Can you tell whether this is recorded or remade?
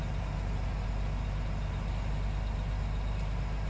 recorded